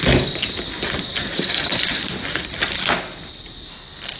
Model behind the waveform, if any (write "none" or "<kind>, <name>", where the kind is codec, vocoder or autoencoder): none